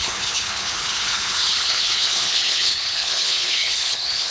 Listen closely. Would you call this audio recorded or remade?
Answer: remade